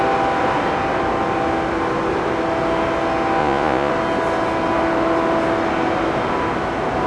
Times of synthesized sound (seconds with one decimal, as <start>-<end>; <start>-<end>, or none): 3.4-3.9